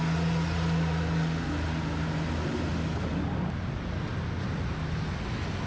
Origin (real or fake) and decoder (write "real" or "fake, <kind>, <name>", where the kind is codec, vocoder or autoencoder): real